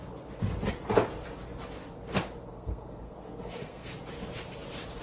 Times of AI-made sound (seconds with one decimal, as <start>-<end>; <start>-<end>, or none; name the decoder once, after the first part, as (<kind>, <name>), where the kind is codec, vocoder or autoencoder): 2.5-3.9 (codec, SNAC)